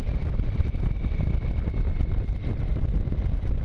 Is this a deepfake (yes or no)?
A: yes